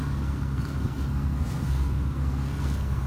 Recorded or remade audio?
remade